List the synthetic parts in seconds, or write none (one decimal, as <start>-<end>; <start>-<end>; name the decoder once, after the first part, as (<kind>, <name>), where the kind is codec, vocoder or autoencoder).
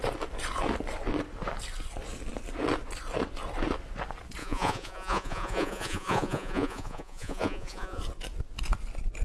4.4-8.0 (vocoder, Vocos)